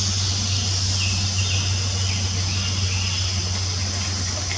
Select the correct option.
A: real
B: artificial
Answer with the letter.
B